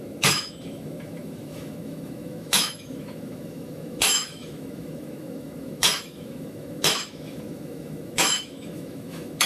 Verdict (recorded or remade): remade